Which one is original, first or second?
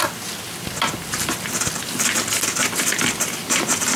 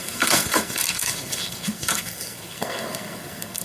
first